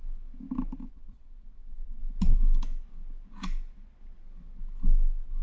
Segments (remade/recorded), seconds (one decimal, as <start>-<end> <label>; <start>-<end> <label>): 0.0-0.9 recorded; 0.9-2.0 remade; 2.0-5.4 recorded